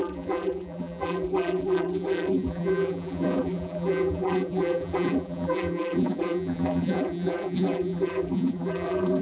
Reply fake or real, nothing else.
fake